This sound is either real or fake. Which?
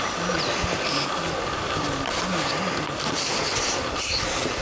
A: real